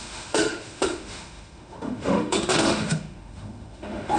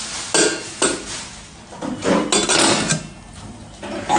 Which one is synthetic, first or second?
first